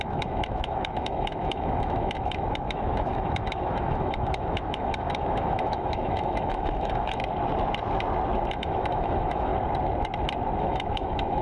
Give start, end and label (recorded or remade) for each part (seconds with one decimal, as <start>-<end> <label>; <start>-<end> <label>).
0.0-7.2 remade; 7.2-8.5 recorded; 8.5-9.5 remade; 9.5-10.6 recorded; 10.6-11.4 remade